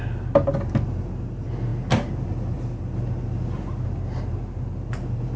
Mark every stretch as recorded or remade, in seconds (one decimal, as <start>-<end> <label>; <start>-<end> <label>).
0.0-5.4 recorded

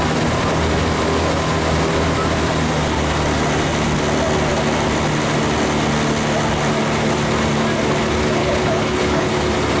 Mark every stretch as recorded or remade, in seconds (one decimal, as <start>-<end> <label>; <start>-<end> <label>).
0.0-8.4 recorded; 8.4-9.3 remade; 9.3-9.8 recorded

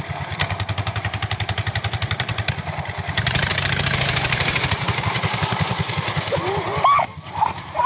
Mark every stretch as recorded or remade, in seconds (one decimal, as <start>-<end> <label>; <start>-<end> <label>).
0.0-2.3 remade; 2.3-2.9 recorded; 2.9-7.9 remade